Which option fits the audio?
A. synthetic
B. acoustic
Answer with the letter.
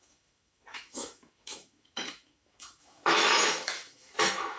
A